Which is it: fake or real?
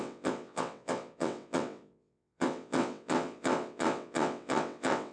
fake